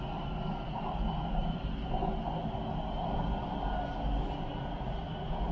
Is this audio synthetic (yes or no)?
no